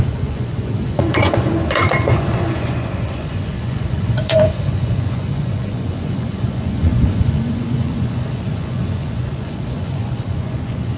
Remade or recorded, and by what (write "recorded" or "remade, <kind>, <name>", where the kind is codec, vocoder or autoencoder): remade, vocoder, Vocos